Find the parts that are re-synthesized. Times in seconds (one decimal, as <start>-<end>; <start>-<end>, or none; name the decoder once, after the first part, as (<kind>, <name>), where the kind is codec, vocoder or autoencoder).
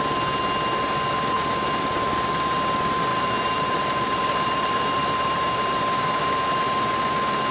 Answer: 3.1-6.2 (vocoder, BigVGAN v2)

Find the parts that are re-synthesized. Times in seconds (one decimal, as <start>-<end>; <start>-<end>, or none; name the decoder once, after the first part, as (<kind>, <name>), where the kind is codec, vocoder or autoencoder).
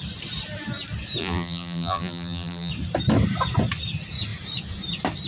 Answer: 1.2-2.7 (vocoder, BigVGAN v2)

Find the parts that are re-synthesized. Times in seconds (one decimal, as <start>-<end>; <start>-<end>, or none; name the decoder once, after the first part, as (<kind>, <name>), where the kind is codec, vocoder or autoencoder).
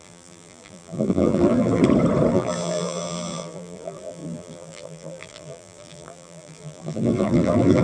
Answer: 0.0-1.8 (vocoder, BigVGAN v2); 2.3-7.8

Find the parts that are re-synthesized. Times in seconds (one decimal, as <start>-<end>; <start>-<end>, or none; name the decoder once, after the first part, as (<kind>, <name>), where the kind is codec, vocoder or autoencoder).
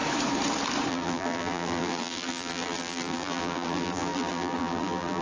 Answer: 0.9-5.2 (vocoder, BigVGAN v2)